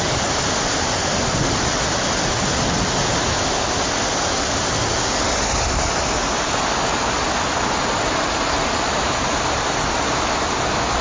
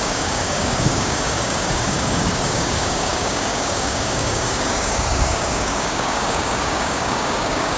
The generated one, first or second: second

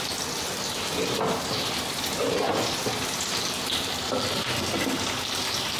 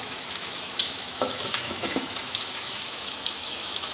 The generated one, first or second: second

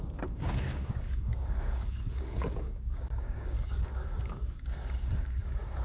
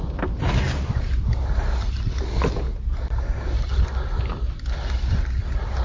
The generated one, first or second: first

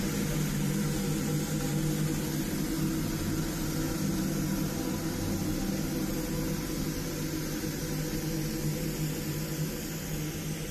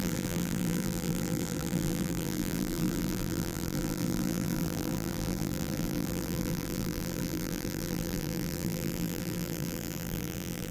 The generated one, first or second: second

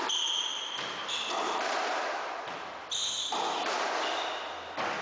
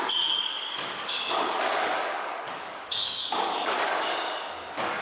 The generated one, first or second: second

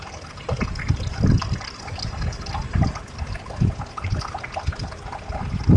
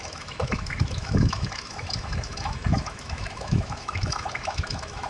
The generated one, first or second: second